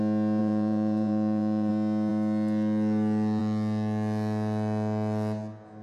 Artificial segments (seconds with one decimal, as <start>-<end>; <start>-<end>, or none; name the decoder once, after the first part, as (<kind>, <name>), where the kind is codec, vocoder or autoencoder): 0.4-1.7 (vocoder, Vocos)